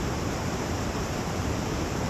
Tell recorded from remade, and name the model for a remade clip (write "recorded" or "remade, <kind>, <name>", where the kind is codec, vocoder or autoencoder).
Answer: remade, vocoder, BigVGAN v2